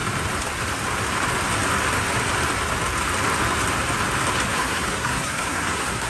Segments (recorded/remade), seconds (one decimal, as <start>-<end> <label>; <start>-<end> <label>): 0.0-4.5 recorded; 4.5-6.1 remade